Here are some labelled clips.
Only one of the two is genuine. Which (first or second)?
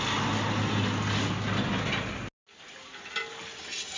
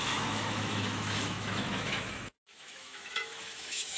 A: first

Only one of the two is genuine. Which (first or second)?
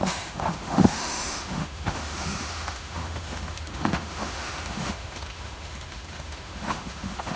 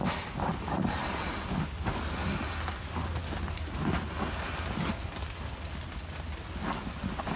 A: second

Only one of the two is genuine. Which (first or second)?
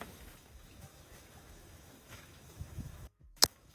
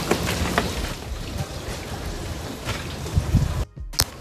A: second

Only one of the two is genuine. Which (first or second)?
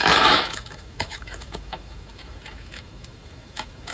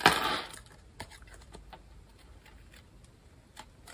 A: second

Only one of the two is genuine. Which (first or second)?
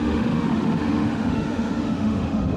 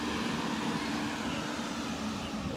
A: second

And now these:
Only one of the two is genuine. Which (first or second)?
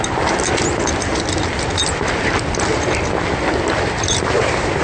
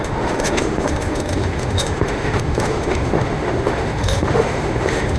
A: first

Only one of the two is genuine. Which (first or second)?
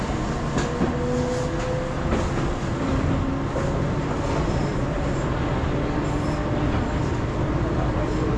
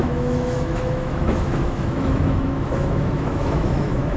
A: first